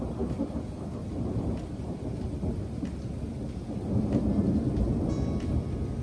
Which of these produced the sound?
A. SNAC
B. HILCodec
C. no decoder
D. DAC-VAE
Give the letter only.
C